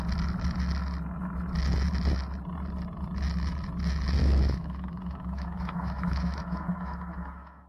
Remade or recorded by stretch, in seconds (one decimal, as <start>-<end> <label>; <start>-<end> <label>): 0.0-4.2 recorded; 4.2-7.7 remade